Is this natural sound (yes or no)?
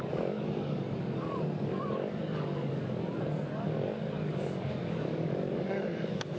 no